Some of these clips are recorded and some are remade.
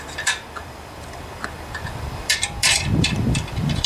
remade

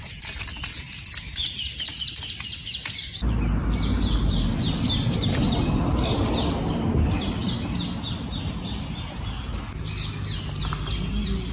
recorded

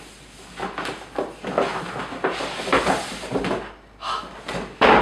recorded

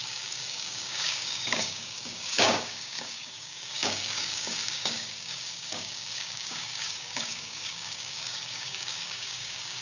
remade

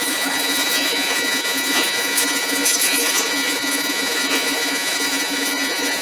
remade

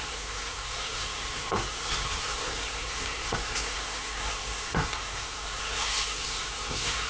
remade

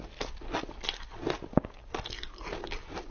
recorded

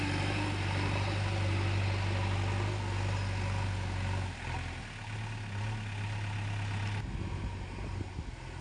recorded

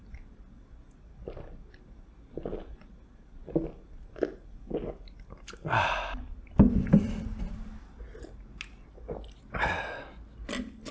recorded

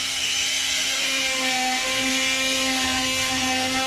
remade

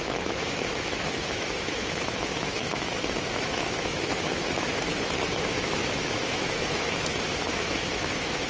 remade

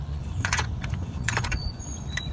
remade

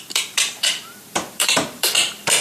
remade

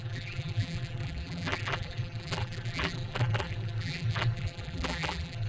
remade